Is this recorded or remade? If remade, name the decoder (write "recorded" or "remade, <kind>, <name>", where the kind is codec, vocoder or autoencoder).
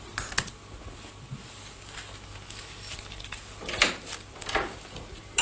recorded